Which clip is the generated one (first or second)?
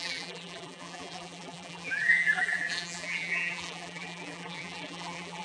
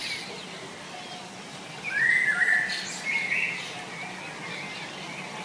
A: first